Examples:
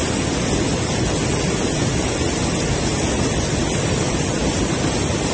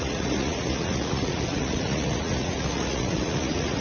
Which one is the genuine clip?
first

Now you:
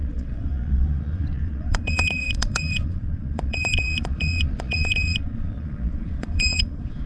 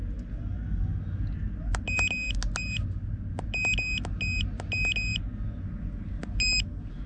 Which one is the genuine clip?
second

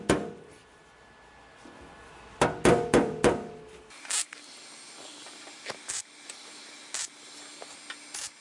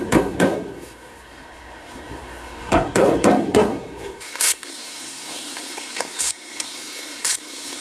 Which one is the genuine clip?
first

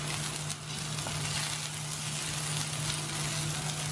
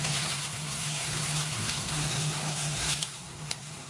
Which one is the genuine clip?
first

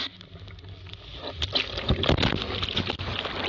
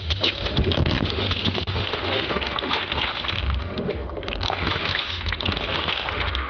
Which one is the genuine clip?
first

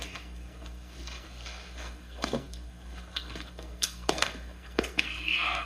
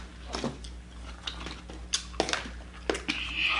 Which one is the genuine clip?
second